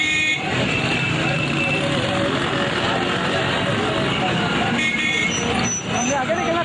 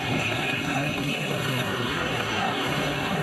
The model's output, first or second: second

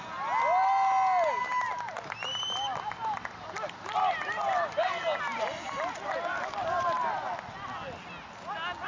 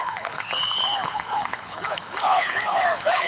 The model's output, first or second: second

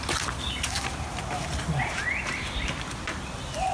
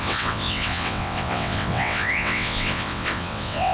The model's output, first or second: second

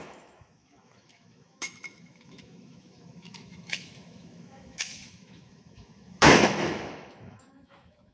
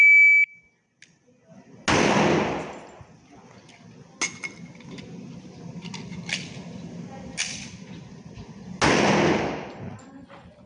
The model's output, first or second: first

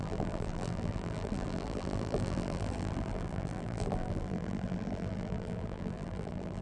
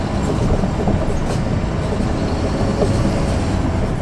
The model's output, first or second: first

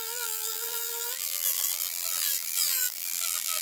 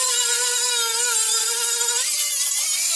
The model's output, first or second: first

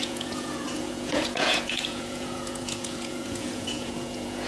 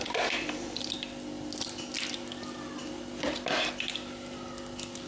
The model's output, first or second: first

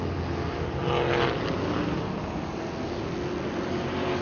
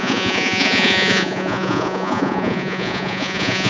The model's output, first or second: second